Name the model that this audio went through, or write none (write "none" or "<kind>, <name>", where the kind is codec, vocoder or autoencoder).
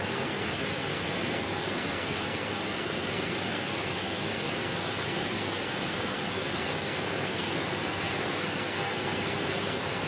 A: codec, SNAC